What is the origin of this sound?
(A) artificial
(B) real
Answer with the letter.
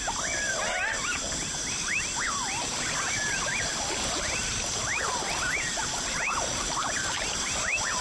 B